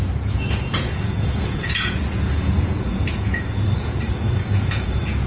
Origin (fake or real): fake